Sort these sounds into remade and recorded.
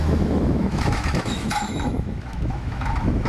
remade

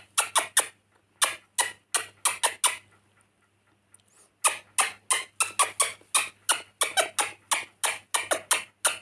recorded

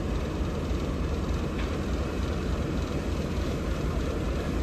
remade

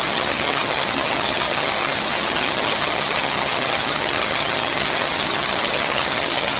remade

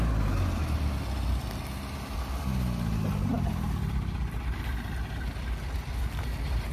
recorded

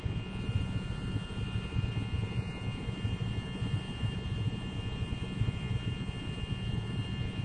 remade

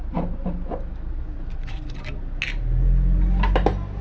recorded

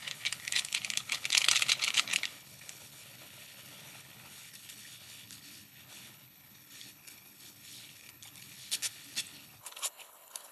remade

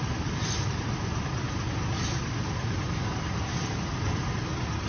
recorded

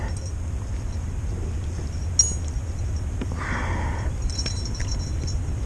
recorded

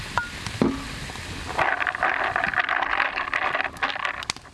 recorded